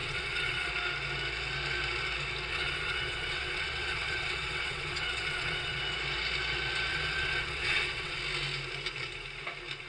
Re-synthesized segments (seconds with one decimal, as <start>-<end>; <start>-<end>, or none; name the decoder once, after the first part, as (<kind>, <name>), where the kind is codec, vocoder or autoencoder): 0.0-0.7 (vocoder, WaveNeXt); 2.5-5.8; 6.9-8.2